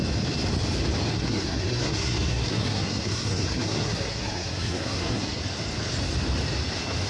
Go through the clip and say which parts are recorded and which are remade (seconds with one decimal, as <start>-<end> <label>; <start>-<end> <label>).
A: 0.0-1.1 recorded; 1.1-5.4 remade; 5.4-7.1 recorded